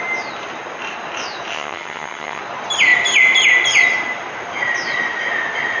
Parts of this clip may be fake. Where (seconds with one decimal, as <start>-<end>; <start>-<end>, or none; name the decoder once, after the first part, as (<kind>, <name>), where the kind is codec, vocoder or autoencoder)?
1.5-2.4 (vocoder, HiFi-GAN)